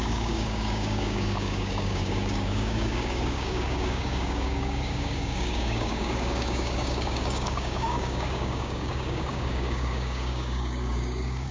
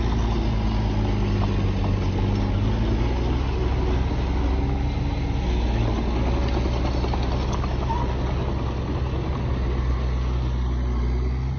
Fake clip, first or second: first